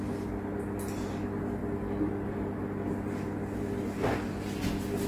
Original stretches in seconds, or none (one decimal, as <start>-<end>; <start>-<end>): 0.0-5.1